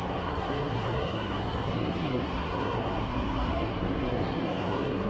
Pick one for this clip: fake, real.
fake